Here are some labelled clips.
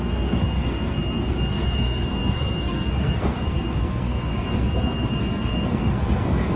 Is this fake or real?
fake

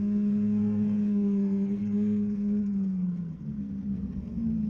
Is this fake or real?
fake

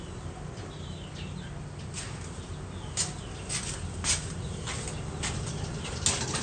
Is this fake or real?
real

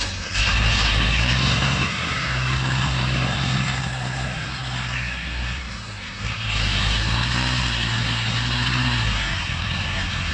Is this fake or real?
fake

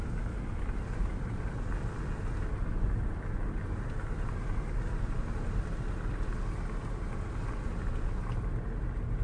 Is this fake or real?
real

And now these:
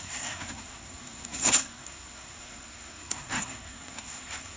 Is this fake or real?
fake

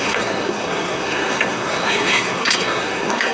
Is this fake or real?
fake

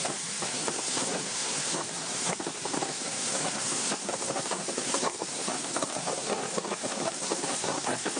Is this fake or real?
fake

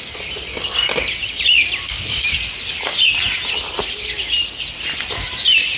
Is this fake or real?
real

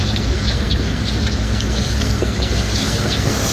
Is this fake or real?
fake